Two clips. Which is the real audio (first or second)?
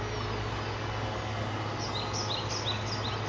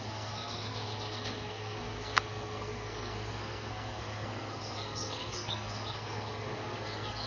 first